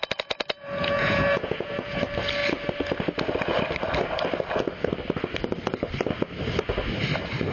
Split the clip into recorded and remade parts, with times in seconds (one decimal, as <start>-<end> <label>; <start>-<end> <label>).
0.0-0.6 recorded; 0.6-2.0 remade; 2.0-7.5 recorded

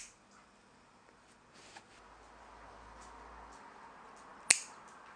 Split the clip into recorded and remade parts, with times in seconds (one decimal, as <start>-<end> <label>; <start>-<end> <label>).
0.0-5.2 recorded

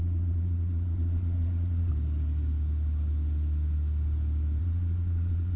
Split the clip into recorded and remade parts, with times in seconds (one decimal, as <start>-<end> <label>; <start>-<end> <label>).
0.0-1.9 remade; 1.9-4.6 recorded; 4.6-5.6 remade

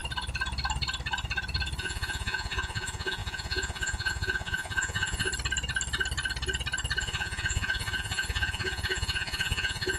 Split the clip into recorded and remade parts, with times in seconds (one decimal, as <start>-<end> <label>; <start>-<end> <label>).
0.0-1.8 recorded; 1.8-5.3 remade; 5.3-7.0 recorded; 7.0-10.0 remade